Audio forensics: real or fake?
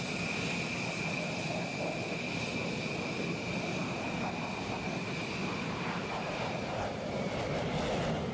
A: real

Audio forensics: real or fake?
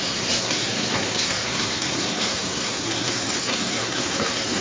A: fake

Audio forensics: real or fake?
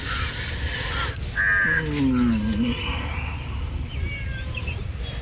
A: real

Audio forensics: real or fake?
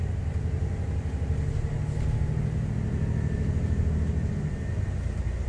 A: real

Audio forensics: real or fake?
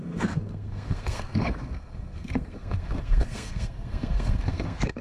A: fake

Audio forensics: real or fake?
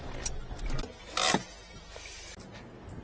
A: real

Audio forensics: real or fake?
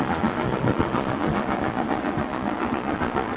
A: fake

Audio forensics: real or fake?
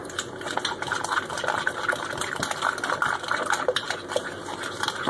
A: real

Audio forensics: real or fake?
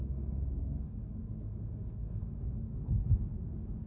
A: fake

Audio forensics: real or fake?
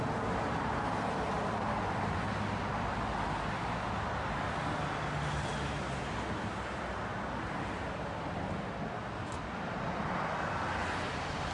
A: real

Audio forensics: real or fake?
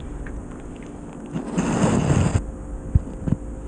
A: real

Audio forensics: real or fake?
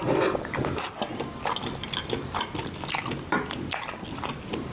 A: real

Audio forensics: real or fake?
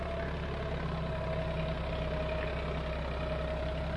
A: real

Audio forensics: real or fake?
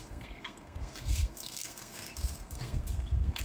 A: fake